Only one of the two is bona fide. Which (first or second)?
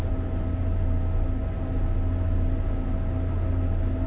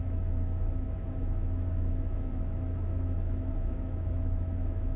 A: first